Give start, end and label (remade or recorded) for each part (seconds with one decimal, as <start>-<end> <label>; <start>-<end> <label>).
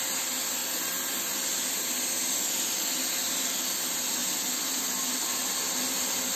0.0-6.4 recorded